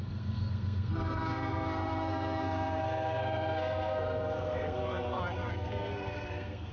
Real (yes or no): no